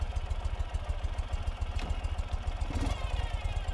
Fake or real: real